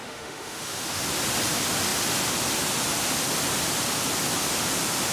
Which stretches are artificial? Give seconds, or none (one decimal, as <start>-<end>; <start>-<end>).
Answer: 0.0-1.0